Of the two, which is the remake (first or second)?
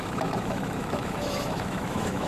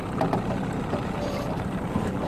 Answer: first